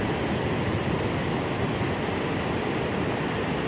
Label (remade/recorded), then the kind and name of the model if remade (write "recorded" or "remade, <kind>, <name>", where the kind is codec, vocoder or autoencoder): recorded